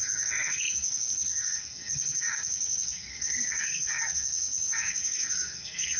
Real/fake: fake